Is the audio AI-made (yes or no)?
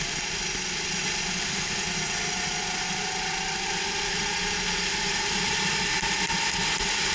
no